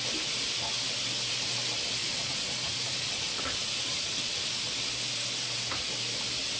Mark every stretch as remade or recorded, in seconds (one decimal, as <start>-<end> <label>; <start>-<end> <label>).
0.0-2.0 recorded; 2.0-4.6 remade; 4.6-6.6 recorded